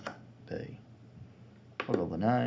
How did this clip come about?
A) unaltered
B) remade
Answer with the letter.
A